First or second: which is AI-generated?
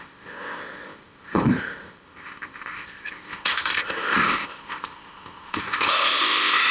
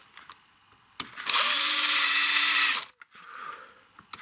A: first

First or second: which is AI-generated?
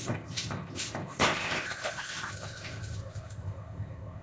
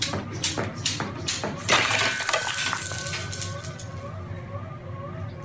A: first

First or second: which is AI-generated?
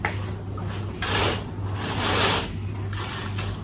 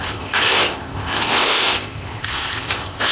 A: second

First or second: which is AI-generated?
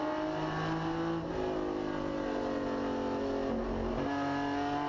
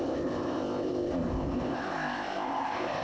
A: second